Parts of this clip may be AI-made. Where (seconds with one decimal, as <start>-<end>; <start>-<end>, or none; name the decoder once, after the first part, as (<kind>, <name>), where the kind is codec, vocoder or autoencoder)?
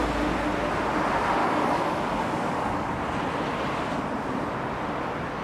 1.4-2.9 (codec, DAC)